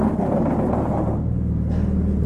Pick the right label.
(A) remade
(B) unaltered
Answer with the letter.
B